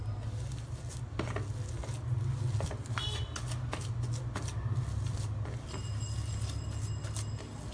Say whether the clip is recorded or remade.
recorded